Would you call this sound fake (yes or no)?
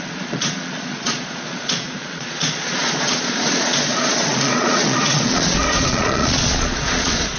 yes